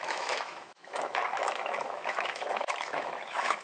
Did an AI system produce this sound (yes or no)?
yes